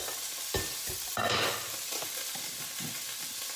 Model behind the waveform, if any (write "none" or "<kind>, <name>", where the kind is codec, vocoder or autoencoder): none